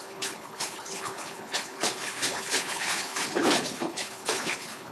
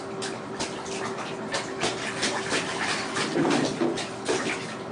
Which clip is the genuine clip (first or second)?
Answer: second